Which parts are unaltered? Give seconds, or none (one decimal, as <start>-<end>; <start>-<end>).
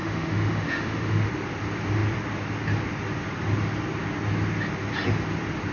1.3-5.7